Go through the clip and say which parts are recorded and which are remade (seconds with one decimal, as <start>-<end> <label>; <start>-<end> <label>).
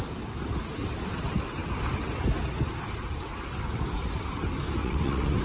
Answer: 0.0-4.8 recorded; 4.8-5.4 remade